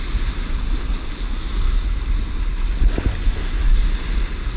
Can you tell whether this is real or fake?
real